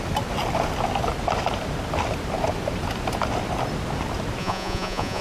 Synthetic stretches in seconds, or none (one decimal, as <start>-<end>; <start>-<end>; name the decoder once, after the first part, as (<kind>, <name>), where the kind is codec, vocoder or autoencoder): 4.4-5.2 (vocoder, Vocos)